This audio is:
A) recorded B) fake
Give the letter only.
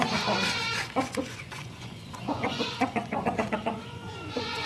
B